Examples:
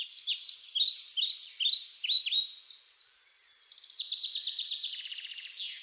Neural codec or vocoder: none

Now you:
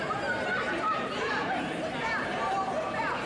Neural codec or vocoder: vocoder, BigVGAN v2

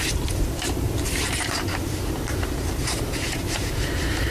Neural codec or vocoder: vocoder, BigVGAN v2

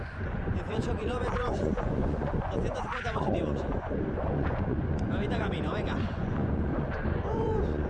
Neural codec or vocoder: vocoder, Vocos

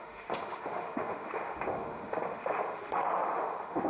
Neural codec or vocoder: autoencoder, DAC-VAE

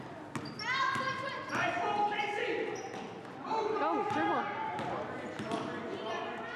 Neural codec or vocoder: none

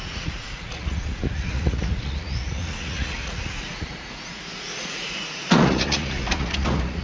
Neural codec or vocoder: vocoder, Vocos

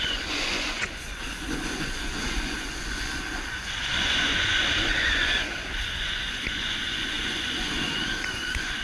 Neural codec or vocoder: vocoder, Vocos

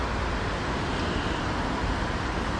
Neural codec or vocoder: none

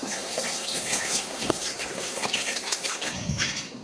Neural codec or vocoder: codec, SNAC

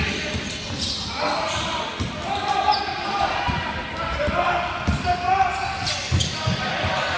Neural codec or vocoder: none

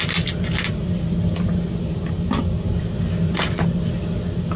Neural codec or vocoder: none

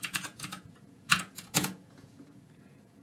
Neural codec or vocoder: vocoder, Vocos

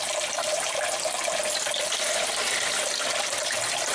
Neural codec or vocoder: none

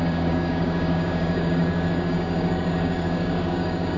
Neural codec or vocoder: codec, DAC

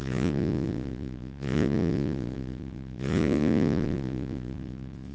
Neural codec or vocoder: vocoder, Vocos